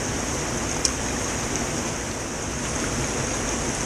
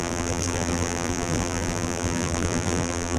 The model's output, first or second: second